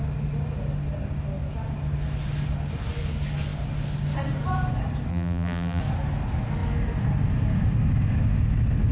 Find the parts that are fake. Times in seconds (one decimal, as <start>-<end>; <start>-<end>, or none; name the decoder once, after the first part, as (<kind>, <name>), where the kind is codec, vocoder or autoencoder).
5.1-5.8 (vocoder, BigVGAN v2)